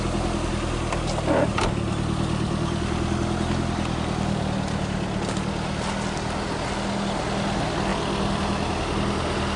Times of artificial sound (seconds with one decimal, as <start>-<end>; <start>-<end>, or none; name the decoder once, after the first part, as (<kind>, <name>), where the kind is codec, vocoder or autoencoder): none